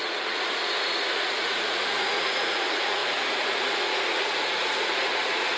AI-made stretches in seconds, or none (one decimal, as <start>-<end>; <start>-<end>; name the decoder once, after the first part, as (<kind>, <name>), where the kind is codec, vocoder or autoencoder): 0.0-5.6 (vocoder, Vocos)